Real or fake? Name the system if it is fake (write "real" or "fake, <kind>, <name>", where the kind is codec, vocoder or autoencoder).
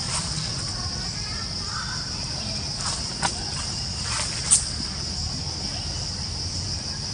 real